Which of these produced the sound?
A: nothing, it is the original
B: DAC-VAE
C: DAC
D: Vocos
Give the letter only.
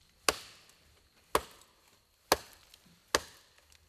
A